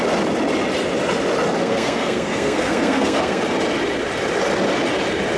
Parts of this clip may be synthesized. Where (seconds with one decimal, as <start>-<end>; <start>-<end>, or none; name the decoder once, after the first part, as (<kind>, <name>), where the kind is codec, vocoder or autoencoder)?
1.6-3.4 (codec, SNAC)